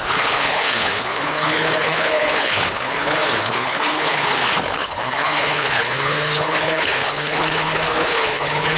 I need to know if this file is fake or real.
fake